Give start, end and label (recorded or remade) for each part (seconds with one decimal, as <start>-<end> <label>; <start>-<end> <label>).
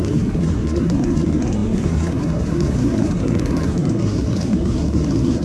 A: 0.0-5.4 remade